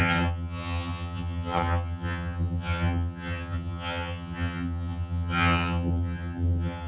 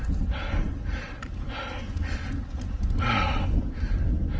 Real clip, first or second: second